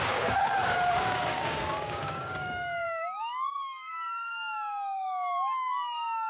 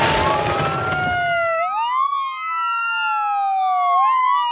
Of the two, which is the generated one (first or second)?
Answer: first